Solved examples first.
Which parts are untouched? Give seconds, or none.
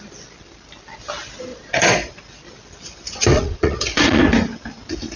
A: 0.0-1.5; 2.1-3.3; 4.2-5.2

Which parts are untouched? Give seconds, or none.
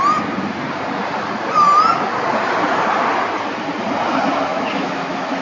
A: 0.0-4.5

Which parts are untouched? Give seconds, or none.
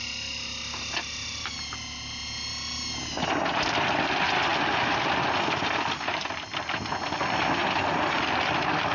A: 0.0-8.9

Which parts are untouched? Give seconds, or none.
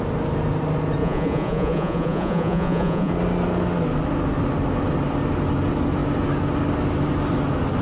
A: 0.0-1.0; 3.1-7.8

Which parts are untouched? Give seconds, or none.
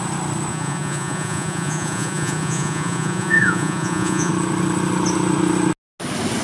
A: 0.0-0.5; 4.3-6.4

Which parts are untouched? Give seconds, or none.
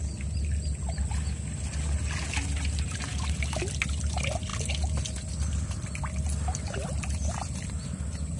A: 0.0-8.4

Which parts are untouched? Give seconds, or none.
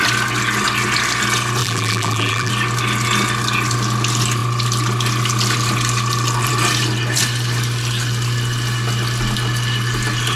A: 0.0-1.6; 2.5-10.4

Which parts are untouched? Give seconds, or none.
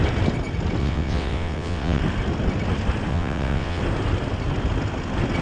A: 0.0-0.8; 2.0-3.1; 3.8-5.4